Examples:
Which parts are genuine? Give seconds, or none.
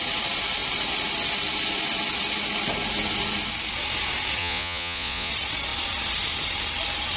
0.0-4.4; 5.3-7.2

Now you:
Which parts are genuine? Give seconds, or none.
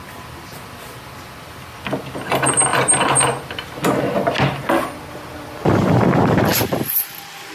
0.0-7.5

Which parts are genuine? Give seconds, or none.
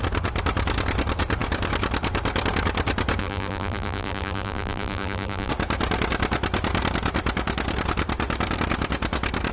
0.0-3.2; 5.5-9.5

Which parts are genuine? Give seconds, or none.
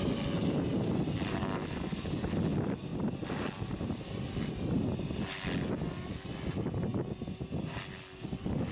0.0-8.7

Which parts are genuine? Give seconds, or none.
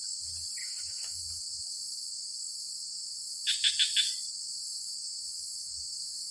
0.0-0.6; 1.2-6.3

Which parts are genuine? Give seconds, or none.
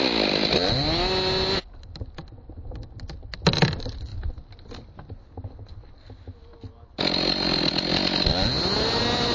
0.0-9.3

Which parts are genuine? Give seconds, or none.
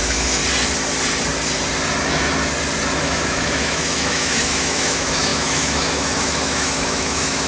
0.4-3.0